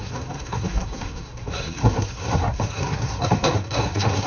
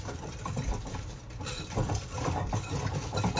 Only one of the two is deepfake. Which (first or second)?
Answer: first